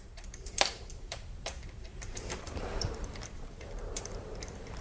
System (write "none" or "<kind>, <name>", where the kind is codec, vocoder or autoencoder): vocoder, BigVGAN v2